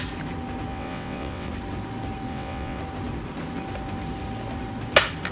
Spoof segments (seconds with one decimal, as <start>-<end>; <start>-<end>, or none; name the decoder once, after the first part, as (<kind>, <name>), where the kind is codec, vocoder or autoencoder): 0.7-1.5 (vocoder, WaveNeXt); 2.3-2.8